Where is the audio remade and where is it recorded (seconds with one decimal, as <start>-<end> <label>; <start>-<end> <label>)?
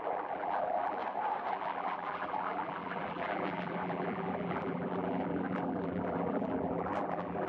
0.0-1.0 remade; 1.0-1.5 recorded; 1.5-7.5 remade